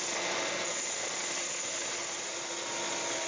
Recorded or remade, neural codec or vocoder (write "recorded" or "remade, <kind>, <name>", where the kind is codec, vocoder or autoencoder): recorded